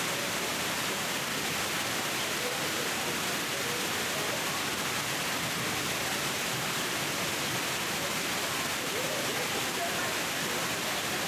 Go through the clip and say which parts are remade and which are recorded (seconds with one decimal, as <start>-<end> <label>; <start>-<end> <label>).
0.0-0.5 recorded; 0.5-1.3 remade; 1.3-8.7 recorded; 8.7-9.6 remade; 9.6-11.3 recorded